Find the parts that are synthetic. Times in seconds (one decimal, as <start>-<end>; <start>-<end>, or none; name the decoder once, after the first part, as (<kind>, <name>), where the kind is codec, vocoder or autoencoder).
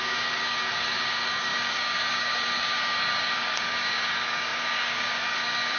0.0-5.8 (codec, DAC)